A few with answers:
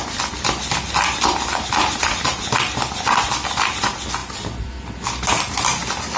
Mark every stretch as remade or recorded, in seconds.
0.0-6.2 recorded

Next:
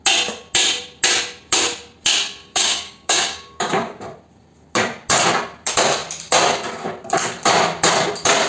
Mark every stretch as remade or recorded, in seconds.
0.0-2.4 recorded; 2.4-4.0 remade; 4.0-8.5 recorded

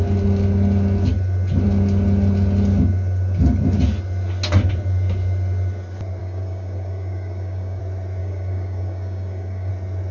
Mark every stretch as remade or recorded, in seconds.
0.0-6.2 recorded; 6.2-7.8 remade; 7.8-8.2 recorded; 8.2-9.7 remade; 9.7-10.1 recorded

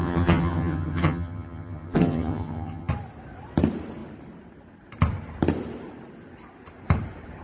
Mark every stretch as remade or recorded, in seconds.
0.0-2.9 remade; 2.9-7.4 recorded

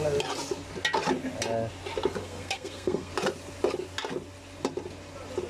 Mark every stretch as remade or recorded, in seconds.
0.0-2.2 recorded; 2.2-3.1 remade; 3.1-5.5 recorded

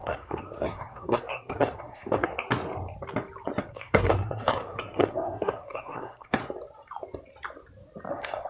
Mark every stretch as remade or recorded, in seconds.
0.0-2.3 remade; 2.3-3.6 recorded; 3.6-6.4 remade; 6.4-8.1 recorded; 8.1-8.5 remade